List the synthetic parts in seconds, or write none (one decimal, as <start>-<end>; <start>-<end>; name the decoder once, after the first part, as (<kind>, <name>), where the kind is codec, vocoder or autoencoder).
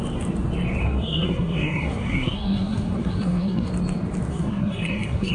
0.8-3.7 (codec, SNAC); 4.3-5.3